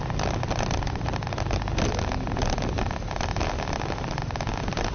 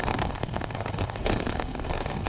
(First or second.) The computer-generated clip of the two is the second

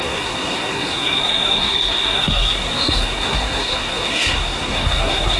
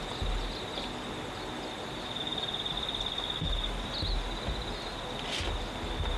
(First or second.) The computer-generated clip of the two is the first